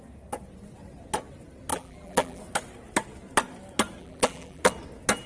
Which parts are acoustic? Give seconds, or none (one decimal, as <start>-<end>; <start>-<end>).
0.0-1.7; 2.4-4.0; 4.7-5.3

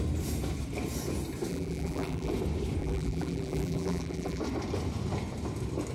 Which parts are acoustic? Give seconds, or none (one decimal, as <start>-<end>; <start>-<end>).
0.0-1.5; 2.3-2.8; 4.4-5.9

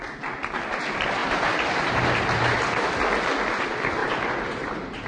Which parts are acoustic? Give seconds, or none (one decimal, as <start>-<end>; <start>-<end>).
0.0-1.2; 2.9-4.0

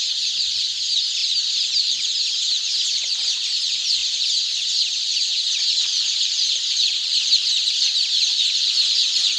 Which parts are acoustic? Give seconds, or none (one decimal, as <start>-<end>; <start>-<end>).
0.0-4.0

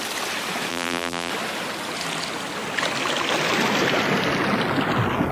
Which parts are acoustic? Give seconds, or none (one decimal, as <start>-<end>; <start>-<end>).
0.0-0.7; 1.3-5.3